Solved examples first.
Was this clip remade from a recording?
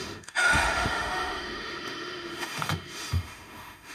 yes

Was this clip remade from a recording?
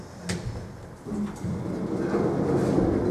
no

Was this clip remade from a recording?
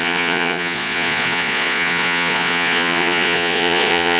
yes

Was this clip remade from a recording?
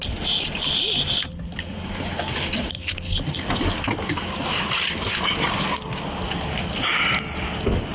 no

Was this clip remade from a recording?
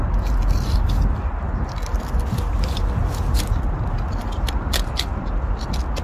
no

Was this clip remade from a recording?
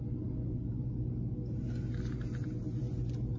no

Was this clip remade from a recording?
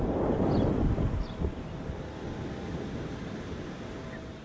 no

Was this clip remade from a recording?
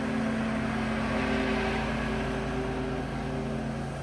no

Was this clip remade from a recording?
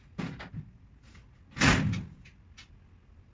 no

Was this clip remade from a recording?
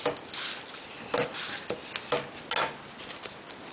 no